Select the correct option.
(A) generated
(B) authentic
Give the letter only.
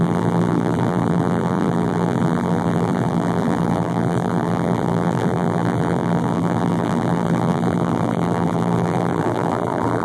A